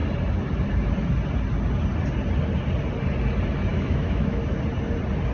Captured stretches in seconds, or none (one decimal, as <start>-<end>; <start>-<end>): 0.0-3.7; 4.4-5.3